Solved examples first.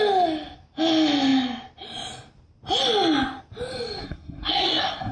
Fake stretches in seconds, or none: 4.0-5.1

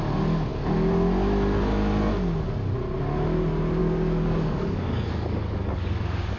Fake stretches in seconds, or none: 3.8-6.4